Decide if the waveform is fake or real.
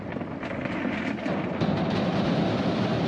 real